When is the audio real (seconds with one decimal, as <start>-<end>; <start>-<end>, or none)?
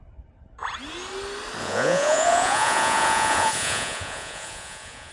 0.0-1.6